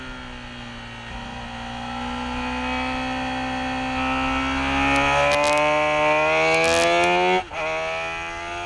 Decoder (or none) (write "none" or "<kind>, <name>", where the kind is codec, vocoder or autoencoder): none